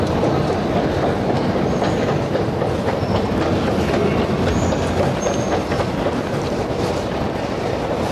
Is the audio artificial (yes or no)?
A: no